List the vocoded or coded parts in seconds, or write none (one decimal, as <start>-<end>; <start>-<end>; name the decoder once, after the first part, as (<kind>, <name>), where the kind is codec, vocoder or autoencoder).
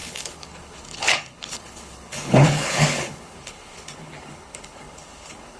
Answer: 0.0-5.6 (codec, HILCodec)